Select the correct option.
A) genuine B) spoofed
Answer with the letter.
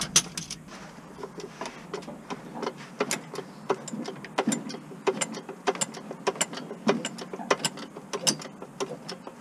A